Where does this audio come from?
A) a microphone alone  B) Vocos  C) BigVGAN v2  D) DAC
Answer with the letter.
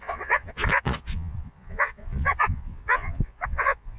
B